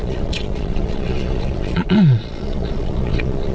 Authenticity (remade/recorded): remade